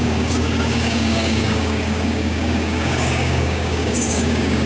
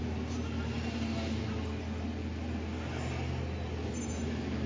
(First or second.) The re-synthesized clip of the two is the first